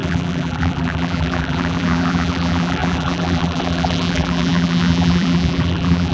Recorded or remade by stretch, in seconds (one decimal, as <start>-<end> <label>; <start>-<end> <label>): 0.0-6.1 remade